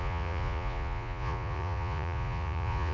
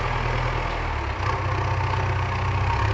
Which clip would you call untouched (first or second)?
second